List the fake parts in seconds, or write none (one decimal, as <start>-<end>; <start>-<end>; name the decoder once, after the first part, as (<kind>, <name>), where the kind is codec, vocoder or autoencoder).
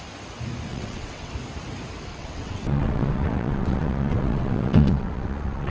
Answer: 0.7-1.3 (vocoder, WaveNeXt); 2.1-5.7